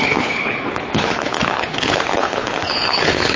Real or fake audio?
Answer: fake